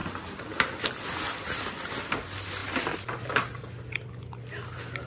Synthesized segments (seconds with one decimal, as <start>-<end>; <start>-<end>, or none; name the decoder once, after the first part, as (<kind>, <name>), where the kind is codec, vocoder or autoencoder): none